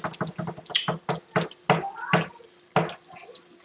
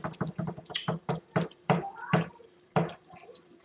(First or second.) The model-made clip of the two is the second